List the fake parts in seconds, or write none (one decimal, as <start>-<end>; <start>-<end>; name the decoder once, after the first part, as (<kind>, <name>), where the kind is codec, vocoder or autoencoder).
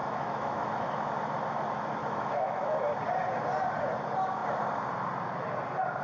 0.0-1.1 (autoencoder, DAC-VAE); 2.0-2.8